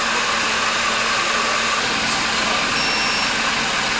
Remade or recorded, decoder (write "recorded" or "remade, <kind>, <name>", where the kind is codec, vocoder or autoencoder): recorded